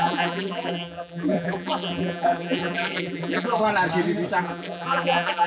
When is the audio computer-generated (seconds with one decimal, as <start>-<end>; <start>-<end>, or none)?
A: 0.0-3.6; 4.4-5.5